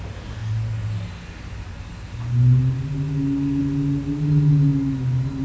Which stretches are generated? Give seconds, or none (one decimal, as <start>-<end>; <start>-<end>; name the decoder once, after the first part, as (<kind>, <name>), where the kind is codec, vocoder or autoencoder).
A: none